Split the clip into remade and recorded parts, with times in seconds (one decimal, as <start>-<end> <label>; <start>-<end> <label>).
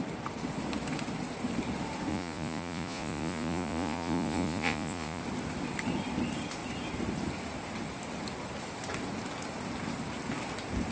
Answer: 0.0-2.1 recorded; 2.1-5.2 remade; 5.2-10.9 recorded